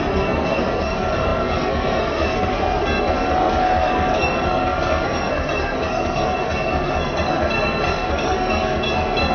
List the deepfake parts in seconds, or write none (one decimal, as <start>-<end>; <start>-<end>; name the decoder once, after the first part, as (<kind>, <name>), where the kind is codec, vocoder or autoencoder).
0.0-9.3 (codec, SNAC)